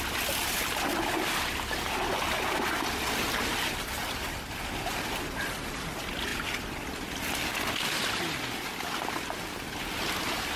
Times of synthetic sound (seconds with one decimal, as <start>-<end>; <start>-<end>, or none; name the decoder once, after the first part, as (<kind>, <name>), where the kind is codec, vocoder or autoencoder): none